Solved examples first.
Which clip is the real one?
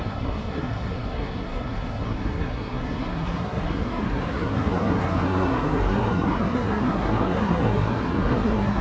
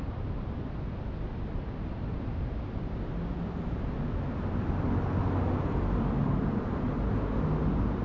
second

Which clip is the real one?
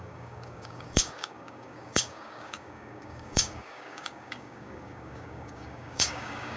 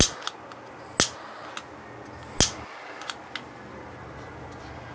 second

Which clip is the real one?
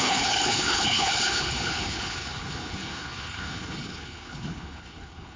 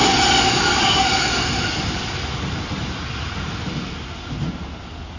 second